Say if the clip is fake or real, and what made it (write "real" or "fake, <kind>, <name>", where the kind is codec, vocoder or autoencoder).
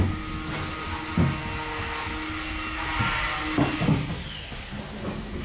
real